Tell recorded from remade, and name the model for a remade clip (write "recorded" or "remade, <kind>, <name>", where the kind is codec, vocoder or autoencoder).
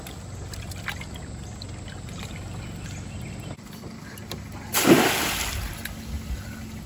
recorded